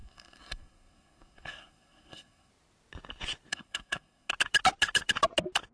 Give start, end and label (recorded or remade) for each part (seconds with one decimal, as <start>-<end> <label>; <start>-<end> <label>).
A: 0.0-2.5 remade; 2.5-3.5 recorded; 3.5-4.3 remade; 4.3-5.7 recorded